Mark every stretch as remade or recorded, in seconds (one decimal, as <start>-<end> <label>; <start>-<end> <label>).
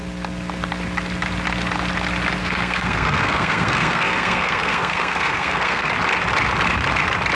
0.0-2.4 recorded; 2.4-5.9 remade; 5.9-7.3 recorded